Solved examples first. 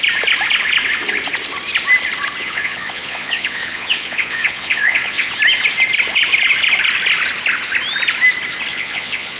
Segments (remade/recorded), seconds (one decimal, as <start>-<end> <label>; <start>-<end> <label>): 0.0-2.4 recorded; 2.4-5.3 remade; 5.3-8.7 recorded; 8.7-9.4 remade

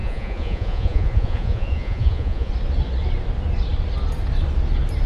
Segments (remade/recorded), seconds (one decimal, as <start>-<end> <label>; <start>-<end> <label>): 0.0-2.5 remade; 2.5-5.1 recorded

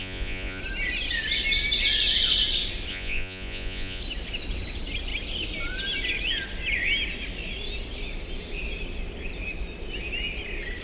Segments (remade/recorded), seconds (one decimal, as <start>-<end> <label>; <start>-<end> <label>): 0.0-0.6 remade; 0.6-2.9 recorded; 2.9-4.0 remade; 4.0-10.8 recorded